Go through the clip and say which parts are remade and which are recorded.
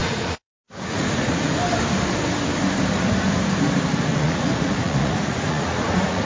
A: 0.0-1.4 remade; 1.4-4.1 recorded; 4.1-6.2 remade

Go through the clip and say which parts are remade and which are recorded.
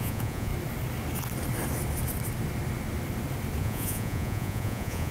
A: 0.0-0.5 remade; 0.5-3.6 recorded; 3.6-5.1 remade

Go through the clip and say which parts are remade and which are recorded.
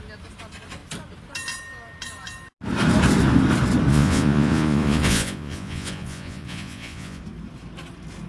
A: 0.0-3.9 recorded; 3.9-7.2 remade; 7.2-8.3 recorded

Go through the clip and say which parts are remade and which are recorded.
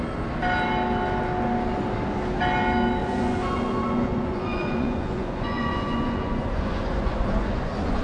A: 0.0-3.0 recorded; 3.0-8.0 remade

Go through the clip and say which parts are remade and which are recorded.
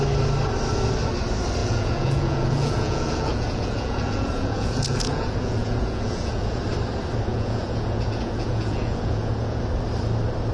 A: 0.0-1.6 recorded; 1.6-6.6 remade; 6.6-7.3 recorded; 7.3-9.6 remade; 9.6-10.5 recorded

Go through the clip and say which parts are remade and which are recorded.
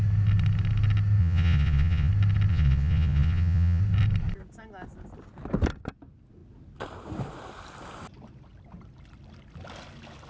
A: 0.0-1.2 recorded; 1.2-2.1 remade; 2.1-2.5 recorded; 2.5-3.8 remade; 3.8-10.3 recorded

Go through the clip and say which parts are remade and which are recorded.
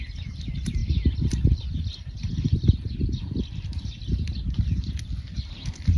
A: 0.0-6.0 recorded